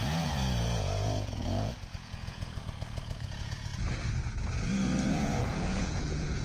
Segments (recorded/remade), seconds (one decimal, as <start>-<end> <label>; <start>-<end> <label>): 0.0-3.7 remade; 3.7-5.1 recorded; 5.1-6.4 remade